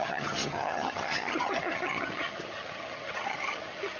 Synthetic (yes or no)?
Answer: yes